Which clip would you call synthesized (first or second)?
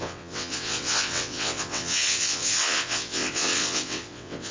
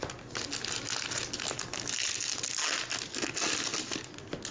first